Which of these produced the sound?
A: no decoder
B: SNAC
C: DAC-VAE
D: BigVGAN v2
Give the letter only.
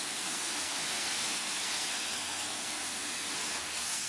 B